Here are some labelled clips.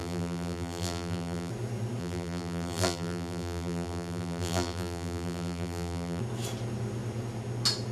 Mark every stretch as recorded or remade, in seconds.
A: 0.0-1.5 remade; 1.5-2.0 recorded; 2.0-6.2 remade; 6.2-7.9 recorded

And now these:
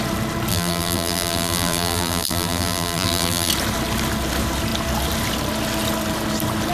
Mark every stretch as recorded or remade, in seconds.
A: 0.0-0.5 recorded; 0.5-3.5 remade; 3.5-6.7 recorded

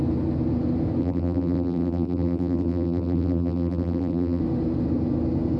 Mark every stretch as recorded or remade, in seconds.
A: 0.0-1.0 recorded; 1.0-4.4 remade; 4.4-5.6 recorded

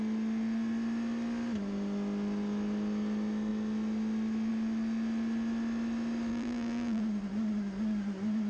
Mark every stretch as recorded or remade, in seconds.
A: 0.0-6.3 recorded; 6.3-7.0 remade; 7.0-8.5 recorded

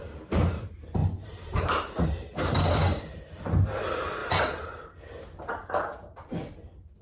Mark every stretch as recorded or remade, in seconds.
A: 0.0-1.0 recorded; 1.0-3.2 remade; 3.2-4.2 recorded; 4.2-5.0 remade; 5.0-7.0 recorded